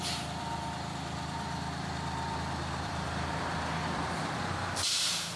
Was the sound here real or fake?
fake